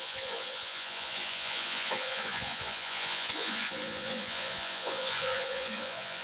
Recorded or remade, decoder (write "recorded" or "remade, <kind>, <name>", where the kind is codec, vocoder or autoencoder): remade, vocoder, Vocos